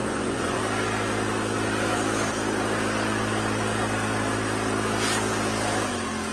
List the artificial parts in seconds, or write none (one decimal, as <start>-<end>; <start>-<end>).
0.0-0.6